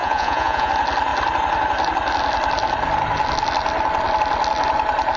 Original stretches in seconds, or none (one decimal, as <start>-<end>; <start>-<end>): 0.7-5.2